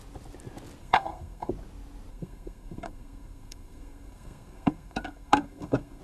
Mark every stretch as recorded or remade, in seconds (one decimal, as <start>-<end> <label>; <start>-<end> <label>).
0.0-0.8 recorded; 0.8-1.5 remade; 1.5-2.1 recorded; 2.1-6.0 remade